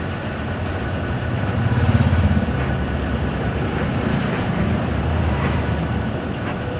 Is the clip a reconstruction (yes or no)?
no